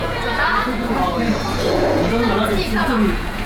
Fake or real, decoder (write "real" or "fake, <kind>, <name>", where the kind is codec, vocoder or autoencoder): fake, vocoder, Vocos